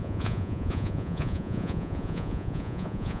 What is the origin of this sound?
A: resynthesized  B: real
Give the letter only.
A